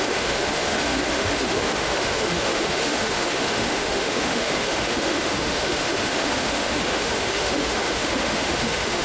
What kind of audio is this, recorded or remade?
remade